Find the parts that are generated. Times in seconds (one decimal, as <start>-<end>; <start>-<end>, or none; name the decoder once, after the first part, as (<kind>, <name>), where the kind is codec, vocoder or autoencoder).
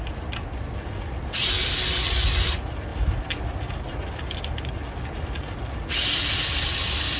none